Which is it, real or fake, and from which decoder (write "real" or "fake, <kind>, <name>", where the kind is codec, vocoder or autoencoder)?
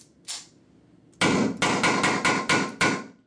real